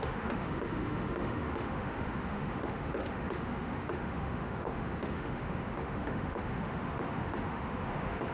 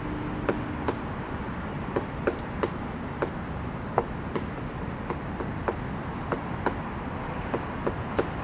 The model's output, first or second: first